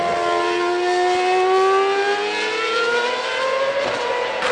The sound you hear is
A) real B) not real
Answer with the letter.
A